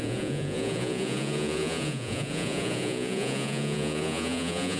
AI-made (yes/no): yes